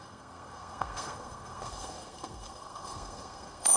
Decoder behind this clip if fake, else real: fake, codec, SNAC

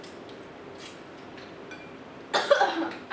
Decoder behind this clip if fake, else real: real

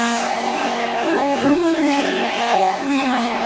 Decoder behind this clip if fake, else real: fake, codec, SNAC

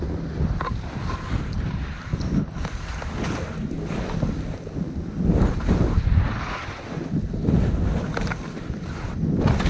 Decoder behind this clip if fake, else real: real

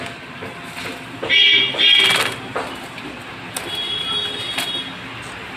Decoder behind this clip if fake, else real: real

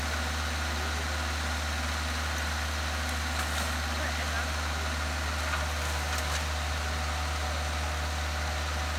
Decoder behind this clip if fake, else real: real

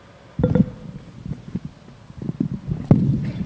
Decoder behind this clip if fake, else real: real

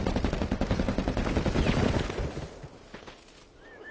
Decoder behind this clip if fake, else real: real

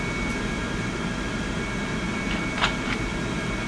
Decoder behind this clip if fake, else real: real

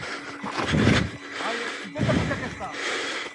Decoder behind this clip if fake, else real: real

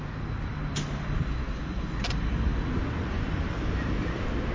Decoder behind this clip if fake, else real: real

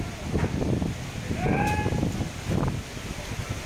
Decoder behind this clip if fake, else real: real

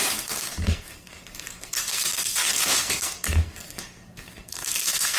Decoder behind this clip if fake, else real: fake, codec, SNAC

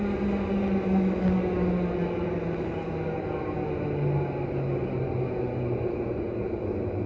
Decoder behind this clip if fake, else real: real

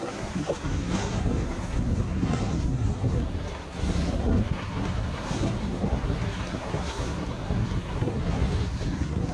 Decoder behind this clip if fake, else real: fake, codec, SNAC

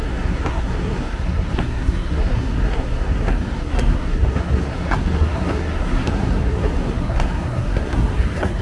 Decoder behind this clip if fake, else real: fake, codec, SNAC